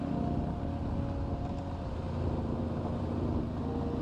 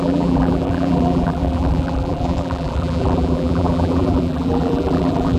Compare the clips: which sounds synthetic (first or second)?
second